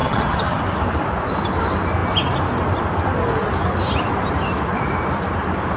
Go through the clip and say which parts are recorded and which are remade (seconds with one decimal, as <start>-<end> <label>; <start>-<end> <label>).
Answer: 0.0-0.6 remade; 0.6-5.8 recorded